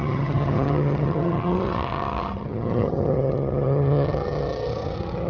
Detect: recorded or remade remade